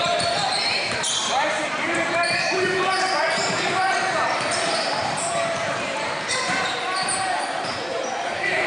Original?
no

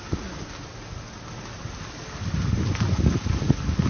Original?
yes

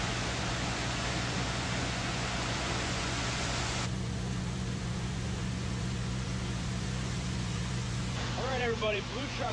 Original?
no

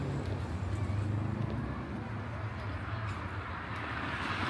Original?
yes